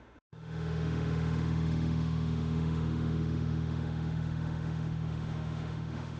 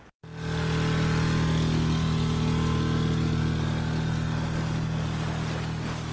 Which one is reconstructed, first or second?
first